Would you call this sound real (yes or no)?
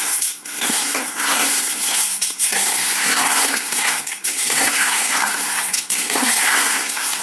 no